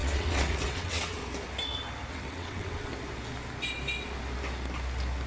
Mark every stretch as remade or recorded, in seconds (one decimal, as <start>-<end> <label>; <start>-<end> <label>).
0.0-1.2 remade; 1.2-2.1 recorded; 2.1-2.9 remade; 2.9-5.3 recorded